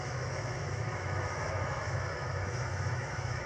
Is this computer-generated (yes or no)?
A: yes